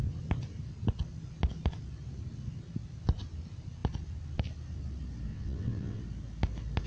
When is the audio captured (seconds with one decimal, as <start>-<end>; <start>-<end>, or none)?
0.0-5.3; 6.0-6.9